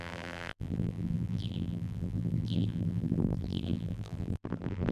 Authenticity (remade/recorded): remade